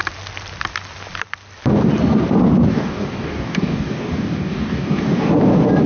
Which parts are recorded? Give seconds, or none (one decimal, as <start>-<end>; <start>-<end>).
0.0-2.7; 5.3-5.9